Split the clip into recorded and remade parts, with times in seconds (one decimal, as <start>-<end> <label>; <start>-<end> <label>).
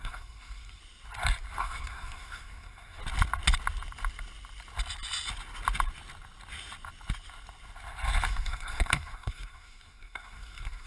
0.0-0.8 remade; 0.8-1.6 recorded; 1.6-3.0 remade; 3.0-8.3 recorded; 8.3-10.9 remade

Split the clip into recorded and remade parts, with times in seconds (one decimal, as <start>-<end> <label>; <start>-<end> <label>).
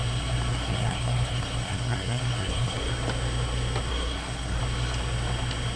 0.0-0.5 recorded; 0.5-2.9 remade; 2.9-3.9 recorded; 3.9-4.6 remade; 4.6-5.8 recorded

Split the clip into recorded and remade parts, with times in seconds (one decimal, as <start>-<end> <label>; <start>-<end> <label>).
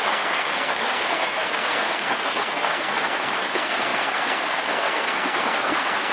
0.0-6.1 remade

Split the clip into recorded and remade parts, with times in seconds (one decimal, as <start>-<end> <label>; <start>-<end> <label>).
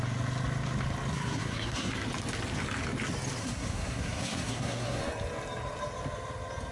0.0-1.1 recorded; 1.1-1.9 remade; 1.9-3.4 recorded; 3.4-5.0 remade; 5.0-6.7 recorded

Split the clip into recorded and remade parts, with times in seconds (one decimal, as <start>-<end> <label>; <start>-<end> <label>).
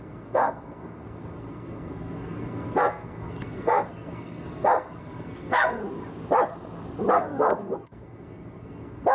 0.0-5.8 remade; 5.8-7.1 recorded; 7.1-9.1 remade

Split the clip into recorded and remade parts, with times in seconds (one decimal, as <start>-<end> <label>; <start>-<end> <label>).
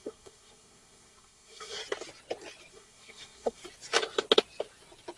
0.0-1.8 remade; 1.8-2.7 recorded; 2.7-3.6 remade; 3.6-5.2 recorded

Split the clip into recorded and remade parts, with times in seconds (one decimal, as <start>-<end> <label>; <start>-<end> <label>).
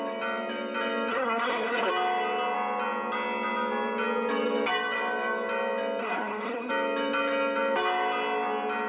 0.0-1.1 recorded; 1.1-1.9 remade; 1.9-6.0 recorded; 6.0-6.7 remade; 6.7-8.9 recorded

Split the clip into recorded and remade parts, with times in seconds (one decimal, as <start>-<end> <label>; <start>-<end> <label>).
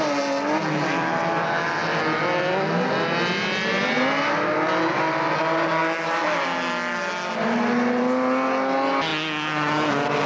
0.0-10.3 recorded